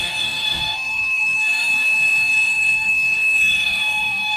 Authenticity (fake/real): fake